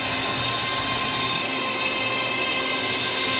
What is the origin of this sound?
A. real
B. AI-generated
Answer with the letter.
A